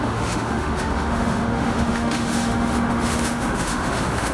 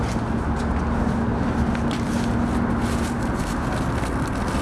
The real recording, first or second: second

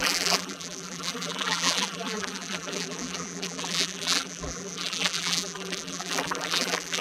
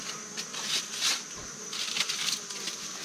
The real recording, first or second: second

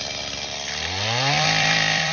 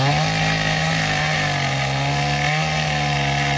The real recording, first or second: second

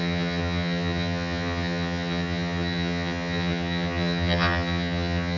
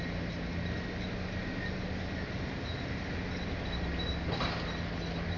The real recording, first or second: second